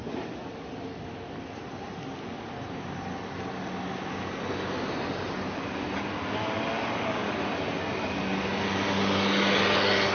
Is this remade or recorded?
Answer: recorded